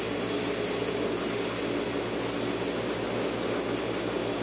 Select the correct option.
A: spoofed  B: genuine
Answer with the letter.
B